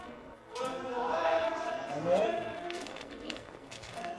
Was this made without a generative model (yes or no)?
no